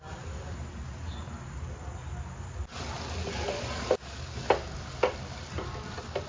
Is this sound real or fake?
real